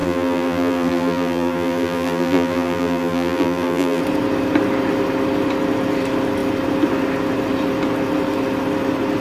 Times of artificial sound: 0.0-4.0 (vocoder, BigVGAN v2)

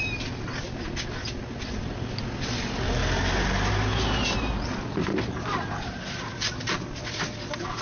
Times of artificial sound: 0.0-3.0 (vocoder, BigVGAN v2); 4.5-7.8

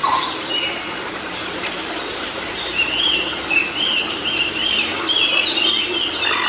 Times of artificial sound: 0.0-3.2 (vocoder, BigVGAN v2); 4.6-5.8